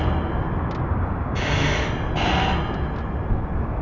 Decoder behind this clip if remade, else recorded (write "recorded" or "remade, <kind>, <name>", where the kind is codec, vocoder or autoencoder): recorded